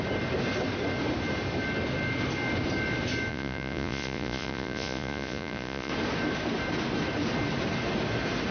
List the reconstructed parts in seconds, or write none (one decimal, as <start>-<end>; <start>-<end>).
3.3-5.9